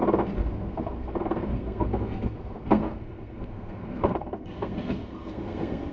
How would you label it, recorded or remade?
remade